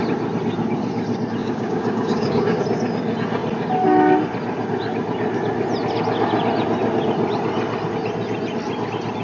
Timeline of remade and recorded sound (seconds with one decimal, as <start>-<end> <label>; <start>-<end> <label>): 0.0-1.4 recorded; 1.4-2.6 remade; 2.6-9.2 recorded